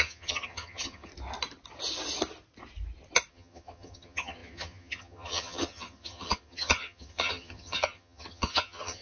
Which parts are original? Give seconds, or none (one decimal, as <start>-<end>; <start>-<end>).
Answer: 1.1-3.3